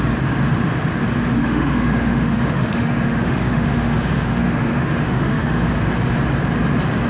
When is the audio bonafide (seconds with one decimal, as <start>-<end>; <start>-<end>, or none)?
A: 0.0-1.4; 5.7-7.1